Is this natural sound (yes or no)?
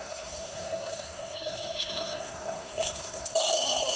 no